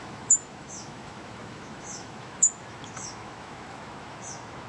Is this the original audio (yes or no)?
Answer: no